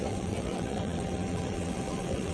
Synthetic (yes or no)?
yes